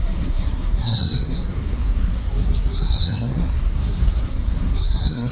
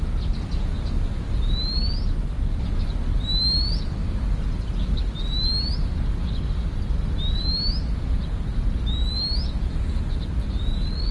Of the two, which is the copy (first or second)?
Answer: first